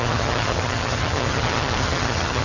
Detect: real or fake fake